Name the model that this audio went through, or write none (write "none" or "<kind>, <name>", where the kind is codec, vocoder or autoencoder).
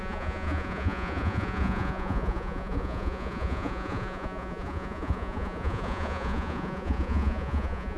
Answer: vocoder, Vocos